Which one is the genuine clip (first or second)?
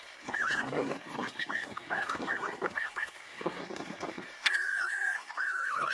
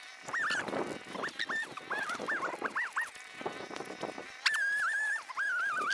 second